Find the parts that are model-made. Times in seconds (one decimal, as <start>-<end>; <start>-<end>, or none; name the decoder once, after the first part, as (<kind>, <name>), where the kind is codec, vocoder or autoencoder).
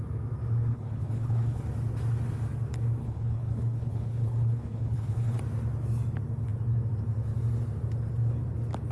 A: 0.7-1.6 (codec, HILCodec); 3.0-5.4